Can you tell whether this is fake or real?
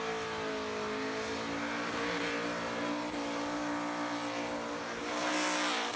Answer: real